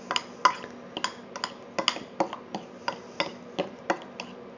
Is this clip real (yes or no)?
yes